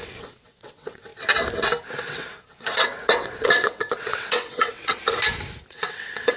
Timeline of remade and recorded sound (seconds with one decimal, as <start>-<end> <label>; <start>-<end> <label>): 0.0-1.1 remade; 1.1-2.0 recorded; 2.0-5.0 remade; 5.0-5.7 recorded; 5.7-6.4 remade